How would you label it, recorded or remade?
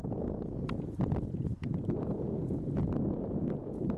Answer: recorded